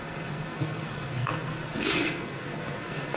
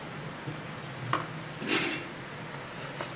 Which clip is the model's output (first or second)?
first